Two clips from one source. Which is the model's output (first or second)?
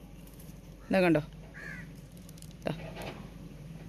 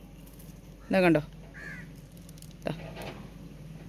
first